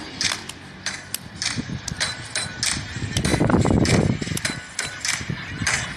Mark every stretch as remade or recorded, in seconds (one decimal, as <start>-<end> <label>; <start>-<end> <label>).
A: 0.0-6.0 recorded

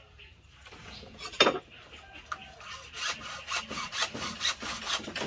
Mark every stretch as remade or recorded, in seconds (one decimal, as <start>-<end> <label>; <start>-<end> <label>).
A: 0.0-0.8 recorded; 0.8-1.4 remade; 1.4-5.3 recorded

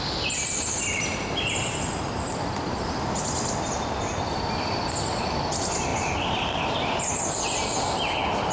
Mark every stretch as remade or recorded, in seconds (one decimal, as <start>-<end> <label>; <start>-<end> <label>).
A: 0.0-8.5 recorded

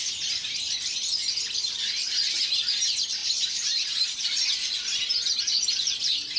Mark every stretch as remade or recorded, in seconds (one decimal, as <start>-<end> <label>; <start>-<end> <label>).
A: 0.0-6.4 recorded

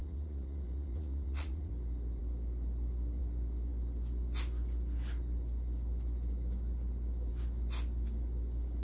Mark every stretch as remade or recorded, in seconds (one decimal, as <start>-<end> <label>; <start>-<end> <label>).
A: 0.0-1.7 remade; 1.7-8.8 recorded

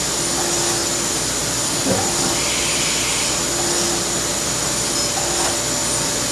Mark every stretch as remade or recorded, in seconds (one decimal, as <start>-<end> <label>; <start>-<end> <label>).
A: 0.0-6.3 recorded

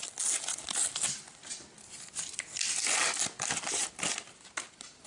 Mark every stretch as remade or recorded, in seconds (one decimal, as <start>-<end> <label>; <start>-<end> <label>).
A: 0.0-5.1 recorded

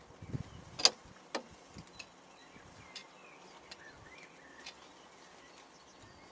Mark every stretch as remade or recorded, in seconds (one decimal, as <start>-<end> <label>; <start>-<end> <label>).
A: 0.0-6.3 recorded